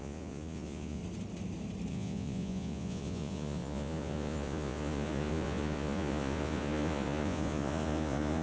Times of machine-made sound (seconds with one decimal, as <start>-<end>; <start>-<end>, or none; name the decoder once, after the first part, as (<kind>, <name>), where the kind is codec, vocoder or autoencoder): 0.0-1.0 (vocoder, Vocos); 1.9-8.4